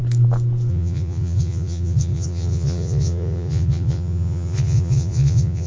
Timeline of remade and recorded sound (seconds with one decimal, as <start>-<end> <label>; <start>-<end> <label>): 0.0-0.7 recorded; 0.7-5.7 remade